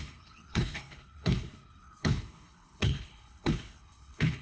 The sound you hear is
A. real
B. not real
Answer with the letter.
B